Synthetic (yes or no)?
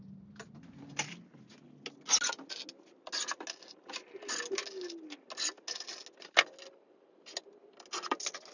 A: no